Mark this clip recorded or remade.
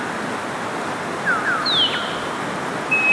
recorded